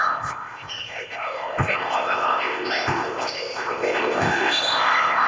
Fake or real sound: fake